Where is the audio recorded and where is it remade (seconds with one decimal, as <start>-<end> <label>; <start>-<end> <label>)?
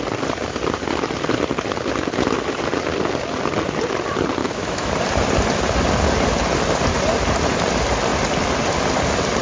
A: 0.0-4.4 recorded; 4.4-4.9 remade; 4.9-9.4 recorded